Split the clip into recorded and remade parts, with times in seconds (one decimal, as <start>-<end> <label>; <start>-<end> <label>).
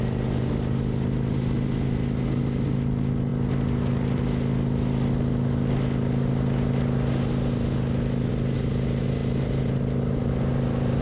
0.0-11.0 recorded